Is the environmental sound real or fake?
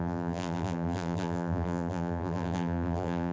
fake